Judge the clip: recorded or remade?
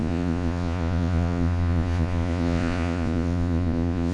remade